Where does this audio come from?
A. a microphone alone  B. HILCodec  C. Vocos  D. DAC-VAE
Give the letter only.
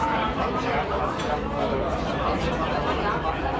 A